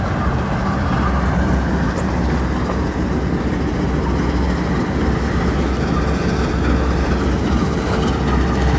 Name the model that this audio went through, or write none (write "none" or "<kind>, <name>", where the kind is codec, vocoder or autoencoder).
none